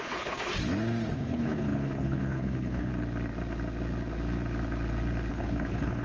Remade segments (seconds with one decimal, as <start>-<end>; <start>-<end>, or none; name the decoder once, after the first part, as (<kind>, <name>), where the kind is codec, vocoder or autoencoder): 0.0-0.5 (codec, HILCodec); 1.1-2.9; 5.3-6.0